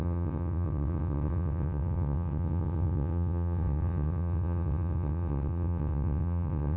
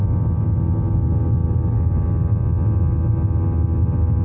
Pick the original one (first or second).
second